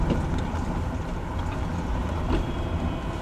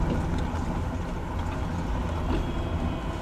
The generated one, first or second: first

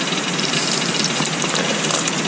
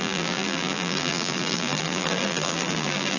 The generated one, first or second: second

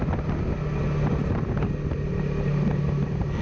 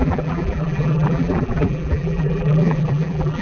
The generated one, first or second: second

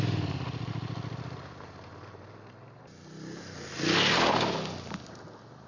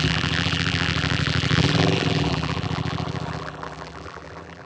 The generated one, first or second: second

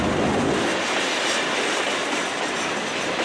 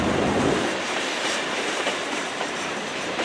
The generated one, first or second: second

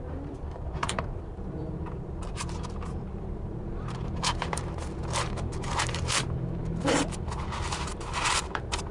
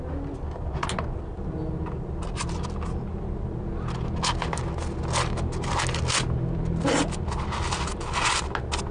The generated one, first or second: first